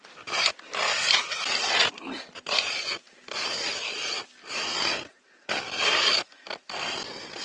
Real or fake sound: real